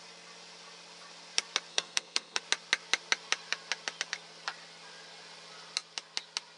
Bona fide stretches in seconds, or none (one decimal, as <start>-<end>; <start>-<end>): 0.0-1.7; 2.4-6.6